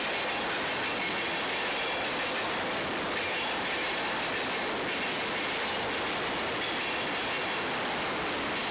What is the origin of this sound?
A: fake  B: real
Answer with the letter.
B